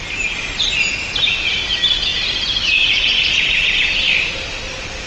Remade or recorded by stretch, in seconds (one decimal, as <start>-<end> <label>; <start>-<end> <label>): 0.0-2.1 recorded; 2.1-3.7 remade; 3.7-5.1 recorded